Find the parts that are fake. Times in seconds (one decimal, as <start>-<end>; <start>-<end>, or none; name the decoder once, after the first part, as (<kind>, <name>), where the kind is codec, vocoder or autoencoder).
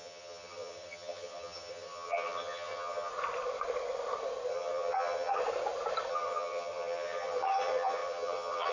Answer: 0.0-3.1 (vocoder, HiFi-GAN); 4.5-5.4; 6.1-8.7